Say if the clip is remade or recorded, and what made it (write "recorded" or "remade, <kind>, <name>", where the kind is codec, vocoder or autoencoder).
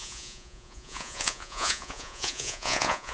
remade, vocoder, Vocos